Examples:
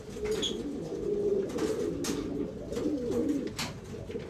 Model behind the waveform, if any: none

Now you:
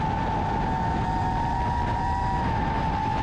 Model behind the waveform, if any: none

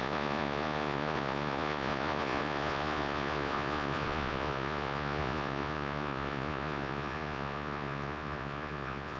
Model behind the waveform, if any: vocoder, Vocos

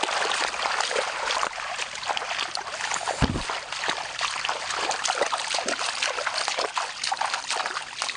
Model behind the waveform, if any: none